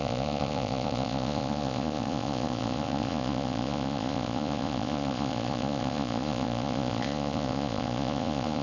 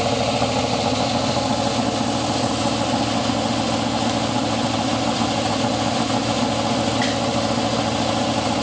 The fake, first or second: first